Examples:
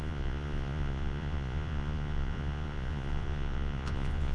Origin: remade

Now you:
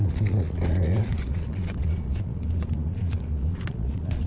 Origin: remade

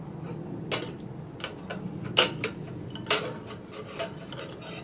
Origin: recorded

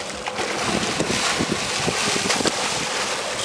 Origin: recorded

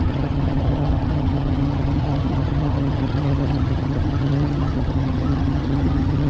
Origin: remade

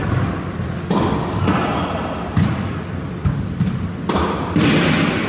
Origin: recorded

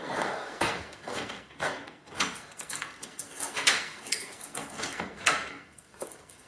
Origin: remade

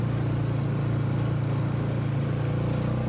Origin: recorded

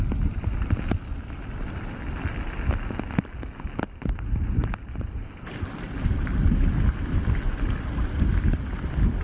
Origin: recorded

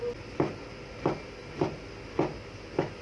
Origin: recorded